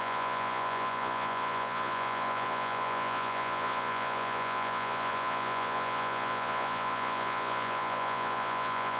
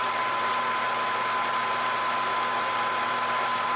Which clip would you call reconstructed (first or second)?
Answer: first